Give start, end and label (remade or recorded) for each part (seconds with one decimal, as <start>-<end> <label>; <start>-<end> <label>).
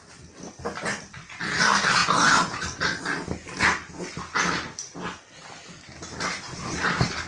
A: 0.0-7.3 recorded